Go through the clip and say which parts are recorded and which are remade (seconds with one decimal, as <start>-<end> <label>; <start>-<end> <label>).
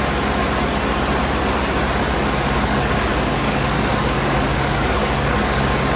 0.0-2.1 recorded; 2.1-6.0 remade